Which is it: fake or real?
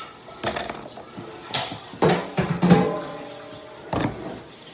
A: real